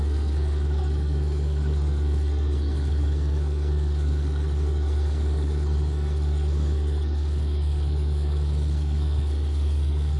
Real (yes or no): no